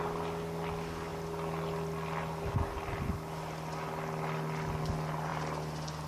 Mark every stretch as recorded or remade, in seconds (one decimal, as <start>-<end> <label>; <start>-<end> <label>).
0.0-6.1 recorded